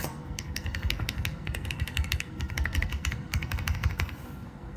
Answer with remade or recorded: remade